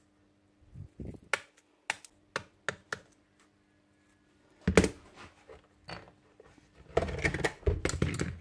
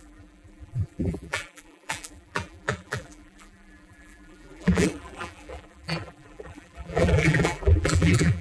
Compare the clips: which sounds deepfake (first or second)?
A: second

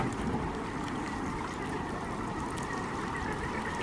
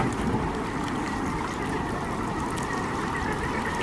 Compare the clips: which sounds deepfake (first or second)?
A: first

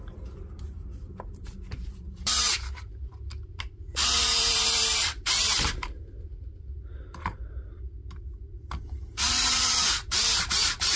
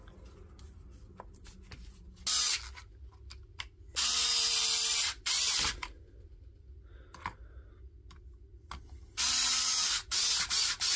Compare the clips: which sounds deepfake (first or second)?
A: first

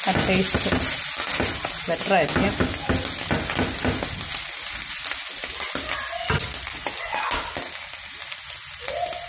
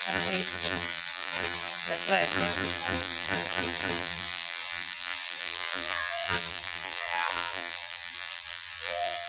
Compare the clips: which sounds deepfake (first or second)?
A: second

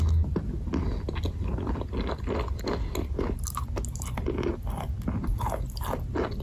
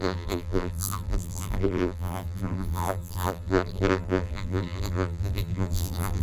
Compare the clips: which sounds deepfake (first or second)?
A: second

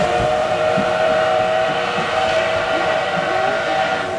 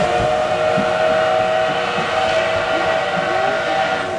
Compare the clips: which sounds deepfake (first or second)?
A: first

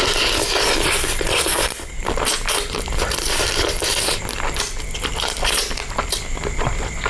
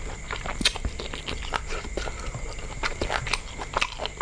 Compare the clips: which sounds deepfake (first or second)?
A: first